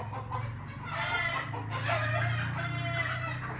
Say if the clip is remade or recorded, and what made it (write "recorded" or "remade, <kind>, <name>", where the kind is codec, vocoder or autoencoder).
recorded